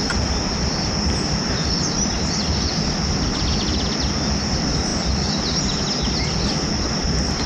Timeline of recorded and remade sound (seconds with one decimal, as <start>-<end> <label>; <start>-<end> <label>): 0.0-7.5 recorded